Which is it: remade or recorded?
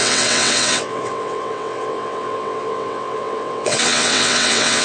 remade